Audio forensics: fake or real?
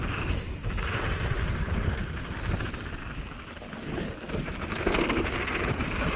real